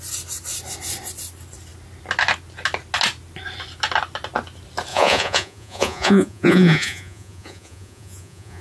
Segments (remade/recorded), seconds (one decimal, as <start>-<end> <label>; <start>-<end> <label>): 0.0-4.9 recorded; 4.9-8.6 remade